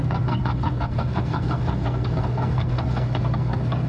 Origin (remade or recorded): remade